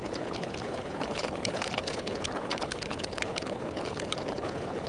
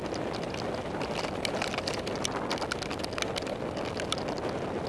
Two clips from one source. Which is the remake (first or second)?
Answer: first